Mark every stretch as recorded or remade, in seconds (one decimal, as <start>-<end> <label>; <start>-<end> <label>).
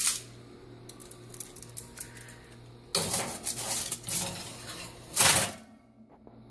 0.0-6.5 recorded